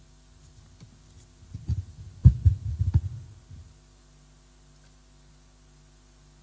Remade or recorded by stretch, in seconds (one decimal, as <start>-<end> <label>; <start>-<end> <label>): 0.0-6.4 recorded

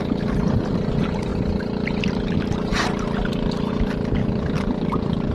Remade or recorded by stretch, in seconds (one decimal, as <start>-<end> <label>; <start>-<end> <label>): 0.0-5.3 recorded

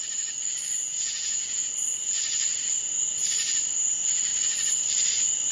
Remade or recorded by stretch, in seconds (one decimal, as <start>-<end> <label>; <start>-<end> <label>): 0.0-0.7 recorded; 0.7-1.6 remade; 1.6-5.5 recorded

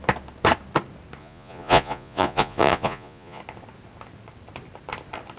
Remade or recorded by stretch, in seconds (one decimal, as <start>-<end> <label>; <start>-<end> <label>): 0.0-1.2 recorded; 1.2-3.4 remade; 3.4-5.4 recorded

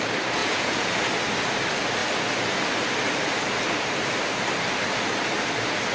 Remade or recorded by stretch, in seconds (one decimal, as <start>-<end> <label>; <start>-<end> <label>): 0.0-0.4 recorded; 0.4-0.9 remade; 0.9-5.9 recorded